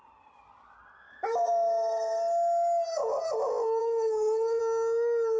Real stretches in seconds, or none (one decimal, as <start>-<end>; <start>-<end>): 0.0-3.8; 4.6-5.4